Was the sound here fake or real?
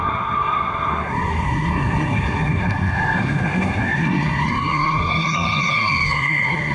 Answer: fake